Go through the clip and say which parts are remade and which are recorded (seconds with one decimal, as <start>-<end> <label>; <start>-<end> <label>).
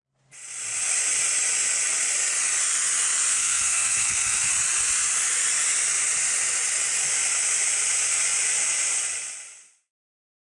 0.0-3.3 recorded; 3.3-4.5 remade; 4.5-10.5 recorded